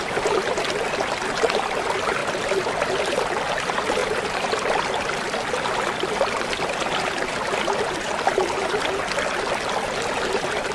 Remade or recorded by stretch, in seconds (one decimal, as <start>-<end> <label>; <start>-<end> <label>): 0.0-4.0 recorded; 4.0-4.8 remade; 4.8-10.7 recorded